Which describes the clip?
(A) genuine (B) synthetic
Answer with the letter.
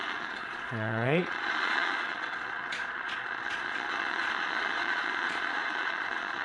B